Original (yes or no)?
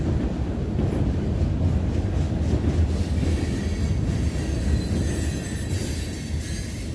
yes